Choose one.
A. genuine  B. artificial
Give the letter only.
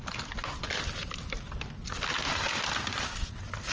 A